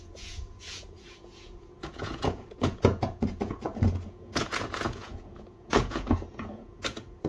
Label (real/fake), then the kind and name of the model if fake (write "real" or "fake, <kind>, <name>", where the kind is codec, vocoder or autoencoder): fake, vocoder, Vocos